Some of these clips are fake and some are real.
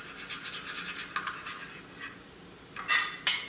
real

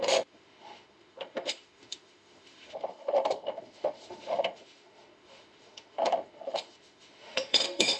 fake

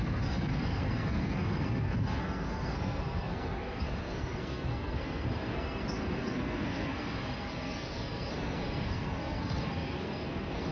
fake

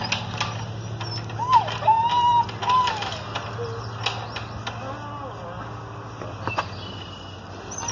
real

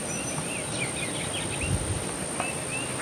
real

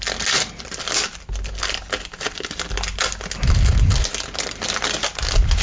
real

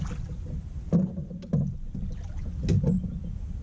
real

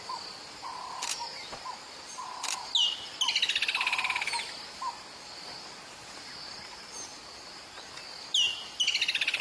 real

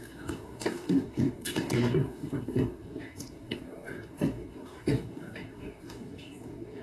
fake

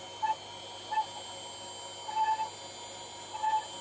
real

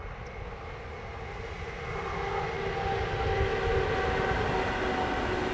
real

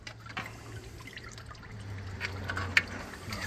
real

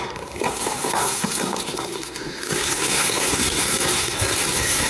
fake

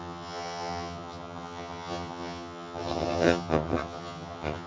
fake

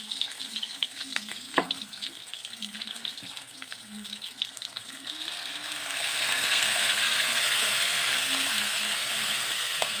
fake